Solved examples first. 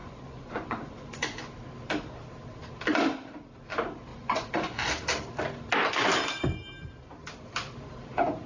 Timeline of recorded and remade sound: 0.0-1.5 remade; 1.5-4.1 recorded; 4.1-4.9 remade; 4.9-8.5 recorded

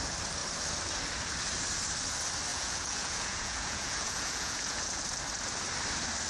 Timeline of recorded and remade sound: 0.0-2.5 recorded; 2.5-5.0 remade; 5.0-6.3 recorded

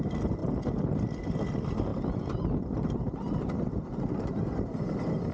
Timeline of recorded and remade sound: 0.0-5.3 recorded

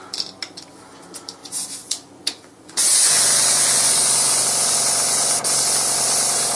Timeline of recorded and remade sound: 0.0-1.4 recorded; 1.4-5.4 remade; 5.4-6.6 recorded

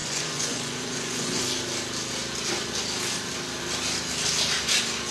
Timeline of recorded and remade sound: 0.0-1.4 remade; 1.4-5.1 recorded

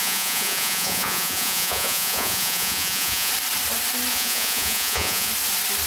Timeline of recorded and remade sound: 0.0-3.3 remade; 3.3-4.1 recorded; 4.1-5.3 remade; 5.3-5.9 recorded

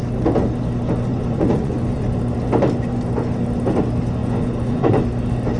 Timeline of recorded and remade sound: 0.0-1.1 recorded; 1.1-2.2 remade; 2.2-4.2 recorded; 4.2-5.0 remade; 5.0-5.6 recorded